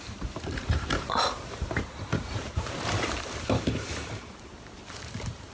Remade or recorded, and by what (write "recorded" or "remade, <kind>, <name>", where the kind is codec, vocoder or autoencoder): remade, vocoder, BigVGAN v2